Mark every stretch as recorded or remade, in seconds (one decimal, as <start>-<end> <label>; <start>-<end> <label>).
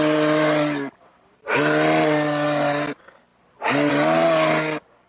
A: 0.0-3.3 recorded; 3.3-3.9 remade; 3.9-5.1 recorded